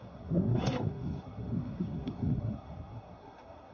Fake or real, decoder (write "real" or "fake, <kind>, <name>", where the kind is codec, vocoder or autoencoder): fake, codec, SNAC